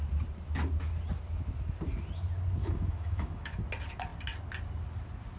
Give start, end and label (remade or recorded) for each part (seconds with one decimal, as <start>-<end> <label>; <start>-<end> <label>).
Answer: 0.0-2.6 recorded; 2.6-3.6 remade; 3.6-5.4 recorded